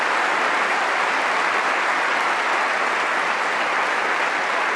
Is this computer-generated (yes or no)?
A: no